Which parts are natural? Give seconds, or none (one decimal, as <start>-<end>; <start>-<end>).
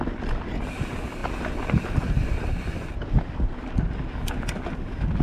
0.0-5.2